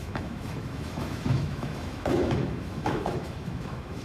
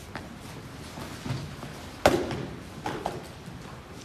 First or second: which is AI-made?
first